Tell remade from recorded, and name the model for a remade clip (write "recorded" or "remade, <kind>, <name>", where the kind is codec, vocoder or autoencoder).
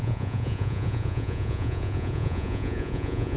remade, vocoder, Vocos